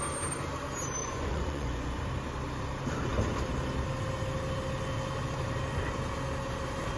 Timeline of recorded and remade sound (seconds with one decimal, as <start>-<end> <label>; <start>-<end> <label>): 0.0-1.0 recorded; 1.0-2.0 remade; 2.0-7.0 recorded